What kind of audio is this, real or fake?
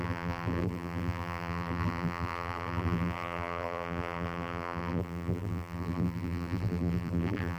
fake